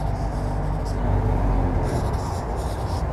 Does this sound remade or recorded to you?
recorded